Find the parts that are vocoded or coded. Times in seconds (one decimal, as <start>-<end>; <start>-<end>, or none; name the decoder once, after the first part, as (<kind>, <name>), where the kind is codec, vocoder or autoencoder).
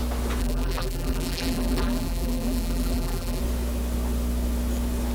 0.4-3.4 (vocoder, BigVGAN v2)